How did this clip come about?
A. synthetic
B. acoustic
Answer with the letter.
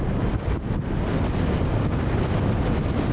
B